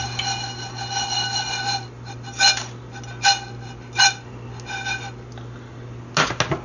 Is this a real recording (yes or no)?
yes